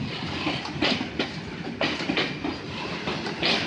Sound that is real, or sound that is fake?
real